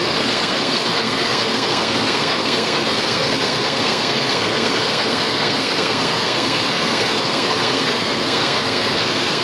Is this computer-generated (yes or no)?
yes